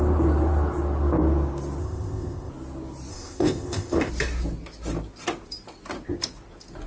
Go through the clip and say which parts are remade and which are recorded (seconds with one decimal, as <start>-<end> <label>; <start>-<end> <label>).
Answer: 0.0-1.8 recorded; 1.8-2.5 remade; 2.5-3.1 recorded; 3.1-4.1 remade; 4.1-6.9 recorded